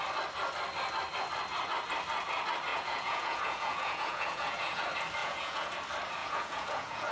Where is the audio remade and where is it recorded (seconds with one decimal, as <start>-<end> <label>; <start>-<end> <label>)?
0.0-2.7 recorded; 2.7-4.8 remade; 4.8-5.2 recorded; 5.2-5.7 remade; 5.7-6.2 recorded; 6.2-7.1 remade